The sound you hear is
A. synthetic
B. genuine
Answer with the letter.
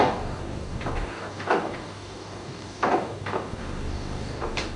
A